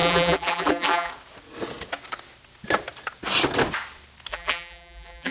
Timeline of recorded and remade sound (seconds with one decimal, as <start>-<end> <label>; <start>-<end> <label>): 0.0-1.1 remade; 1.1-4.3 recorded; 4.3-5.3 remade

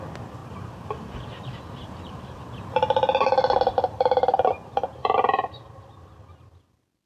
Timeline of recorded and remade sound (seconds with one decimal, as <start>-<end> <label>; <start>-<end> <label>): 0.0-0.4 recorded; 0.4-2.6 remade; 2.6-5.0 recorded; 5.0-5.8 remade; 5.8-7.1 recorded